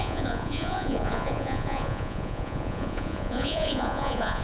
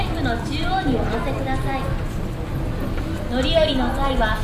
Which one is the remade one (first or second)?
first